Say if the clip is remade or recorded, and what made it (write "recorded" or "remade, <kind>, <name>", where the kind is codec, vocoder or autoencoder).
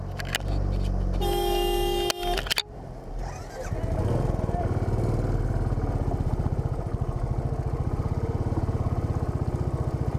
recorded